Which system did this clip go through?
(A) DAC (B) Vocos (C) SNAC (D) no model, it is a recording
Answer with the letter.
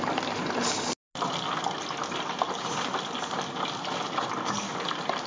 D